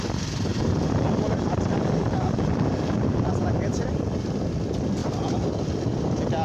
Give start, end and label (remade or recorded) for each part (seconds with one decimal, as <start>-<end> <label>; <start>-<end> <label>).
0.0-0.5 recorded; 0.5-4.3 remade; 4.3-6.4 recorded